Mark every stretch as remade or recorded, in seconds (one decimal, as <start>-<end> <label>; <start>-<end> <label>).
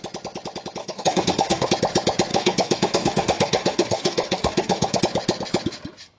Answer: 0.0-0.8 recorded; 0.8-1.7 remade; 1.7-2.3 recorded; 2.3-5.0 remade; 5.0-6.2 recorded